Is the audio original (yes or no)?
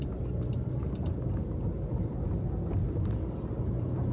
yes